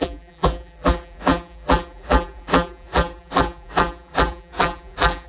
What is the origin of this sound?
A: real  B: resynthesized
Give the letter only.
B